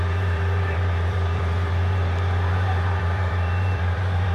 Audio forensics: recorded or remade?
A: remade